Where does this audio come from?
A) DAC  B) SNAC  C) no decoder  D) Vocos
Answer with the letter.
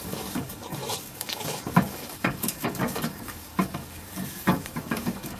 A